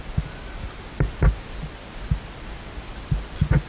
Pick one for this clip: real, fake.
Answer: real